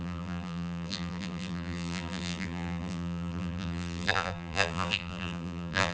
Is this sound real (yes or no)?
no